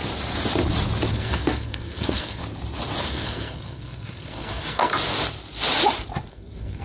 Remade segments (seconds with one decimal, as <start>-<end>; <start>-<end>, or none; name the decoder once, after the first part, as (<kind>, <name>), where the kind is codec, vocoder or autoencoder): 1.1-2.4 (codec, SNAC); 3.0-4.9; 6.3-6.8